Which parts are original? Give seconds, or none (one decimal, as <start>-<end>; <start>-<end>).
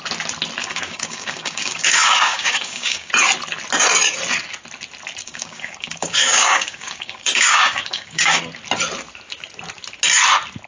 0.0-0.6; 3.1-5.2; 8.4-10.7